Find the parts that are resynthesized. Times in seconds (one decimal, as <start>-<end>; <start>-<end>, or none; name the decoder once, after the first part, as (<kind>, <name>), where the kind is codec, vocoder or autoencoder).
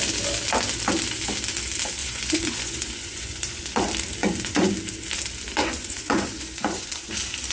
2.0-3.6 (vocoder, Vocos); 4.2-4.7; 5.6-7.1